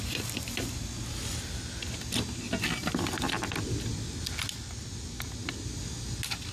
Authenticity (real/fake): real